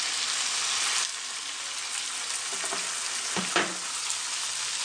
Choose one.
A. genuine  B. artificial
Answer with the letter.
A